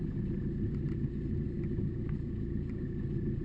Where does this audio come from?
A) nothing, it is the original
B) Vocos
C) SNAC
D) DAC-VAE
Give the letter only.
A